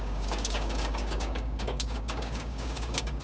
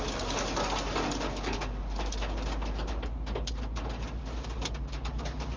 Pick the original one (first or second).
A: second